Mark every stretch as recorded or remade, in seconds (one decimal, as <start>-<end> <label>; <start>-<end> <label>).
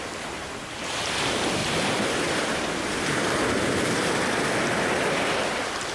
0.0-1.6 remade; 1.6-5.1 recorded; 5.1-5.9 remade